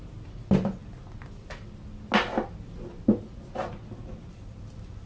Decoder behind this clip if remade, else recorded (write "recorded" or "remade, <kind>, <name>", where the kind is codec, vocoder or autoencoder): recorded